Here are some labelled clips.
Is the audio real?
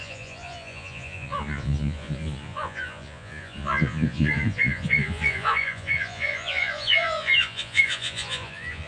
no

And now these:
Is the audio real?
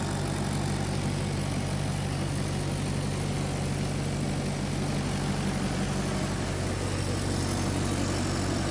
yes